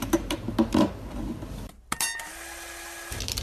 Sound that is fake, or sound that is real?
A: real